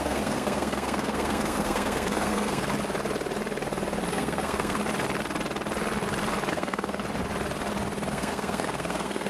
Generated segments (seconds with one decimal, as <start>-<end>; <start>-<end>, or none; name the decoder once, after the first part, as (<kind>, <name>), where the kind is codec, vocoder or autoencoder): 0.0-2.7 (codec, SNAC); 4.1-4.8; 6.5-7.0; 8.1-9.3